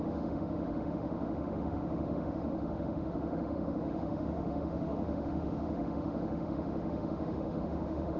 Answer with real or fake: fake